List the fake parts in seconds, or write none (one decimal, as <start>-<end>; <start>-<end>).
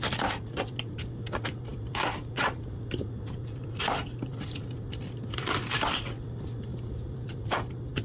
6.7-8.0